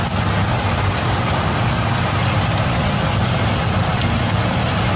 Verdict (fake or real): real